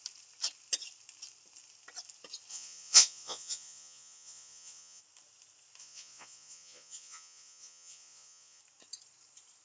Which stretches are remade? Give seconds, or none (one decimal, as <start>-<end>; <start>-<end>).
2.5-5.0; 5.8-8.6